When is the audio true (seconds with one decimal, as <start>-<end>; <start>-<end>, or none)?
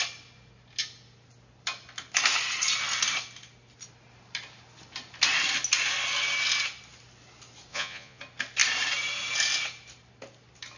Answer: 0.0-7.7; 8.2-10.8